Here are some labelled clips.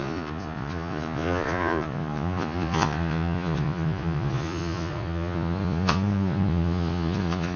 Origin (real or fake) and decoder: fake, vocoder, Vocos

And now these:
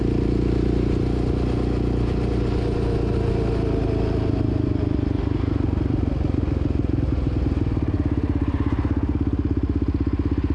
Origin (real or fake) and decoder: real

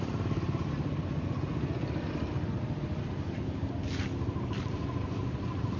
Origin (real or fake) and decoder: real